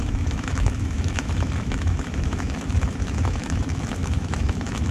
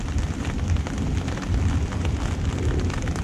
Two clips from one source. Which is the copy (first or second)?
first